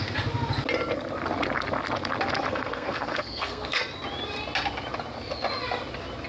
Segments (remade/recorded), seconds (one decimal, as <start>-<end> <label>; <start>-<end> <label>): 0.0-2.5 recorded; 2.5-3.8 remade; 3.8-6.3 recorded